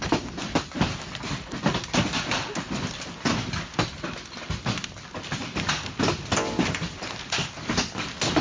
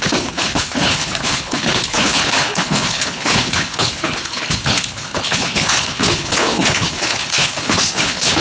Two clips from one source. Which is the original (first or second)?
first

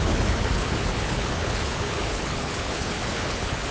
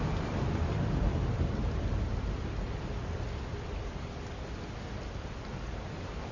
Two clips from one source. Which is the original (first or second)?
second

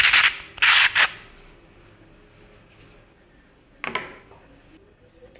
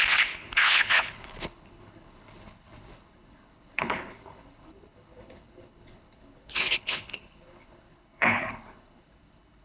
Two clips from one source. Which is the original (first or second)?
first